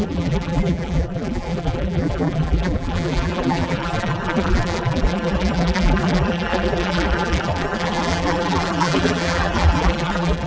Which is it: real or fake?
fake